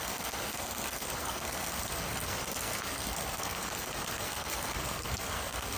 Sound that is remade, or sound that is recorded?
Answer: remade